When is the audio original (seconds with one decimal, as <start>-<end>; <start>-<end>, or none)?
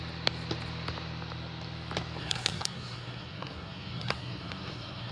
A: 0.0-2.2